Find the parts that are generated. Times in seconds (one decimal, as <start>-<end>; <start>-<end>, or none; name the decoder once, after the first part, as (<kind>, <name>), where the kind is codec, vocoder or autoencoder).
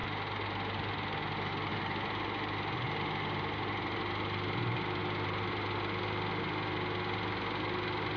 none